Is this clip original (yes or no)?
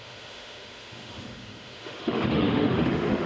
no